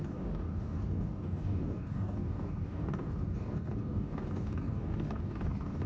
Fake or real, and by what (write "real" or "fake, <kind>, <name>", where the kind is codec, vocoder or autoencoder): fake, codec, DAC